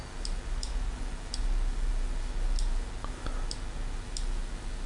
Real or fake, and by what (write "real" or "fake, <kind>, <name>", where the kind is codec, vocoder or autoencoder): real